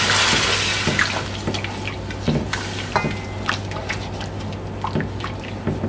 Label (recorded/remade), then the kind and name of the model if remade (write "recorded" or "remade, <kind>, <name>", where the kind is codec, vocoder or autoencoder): recorded